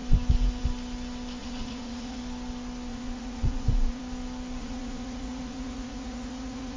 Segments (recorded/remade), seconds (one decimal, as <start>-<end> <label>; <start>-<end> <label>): 0.0-1.4 recorded; 1.4-2.2 remade; 2.2-2.9 recorded; 2.9-4.0 remade; 4.0-4.6 recorded; 4.6-6.8 remade